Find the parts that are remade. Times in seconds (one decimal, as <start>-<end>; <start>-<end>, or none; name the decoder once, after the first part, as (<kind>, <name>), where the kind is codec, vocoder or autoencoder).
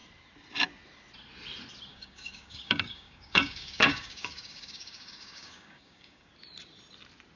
1.9-6.3 (codec, DAC)